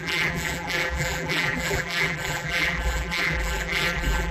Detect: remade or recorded remade